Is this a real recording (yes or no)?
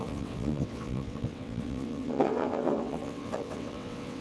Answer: no